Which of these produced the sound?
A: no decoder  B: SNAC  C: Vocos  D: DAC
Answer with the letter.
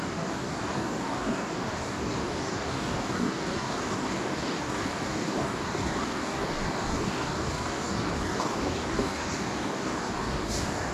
D